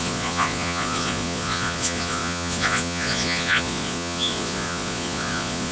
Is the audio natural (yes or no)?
no